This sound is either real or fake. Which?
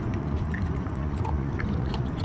fake